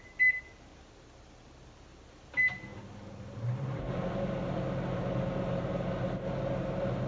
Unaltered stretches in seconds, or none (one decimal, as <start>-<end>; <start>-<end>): 0.0-7.1